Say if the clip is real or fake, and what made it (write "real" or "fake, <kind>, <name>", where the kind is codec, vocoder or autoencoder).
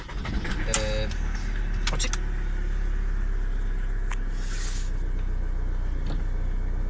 real